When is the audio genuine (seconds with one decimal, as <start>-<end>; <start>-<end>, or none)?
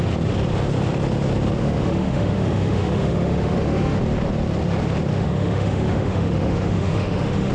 0.0-1.6; 4.0-5.1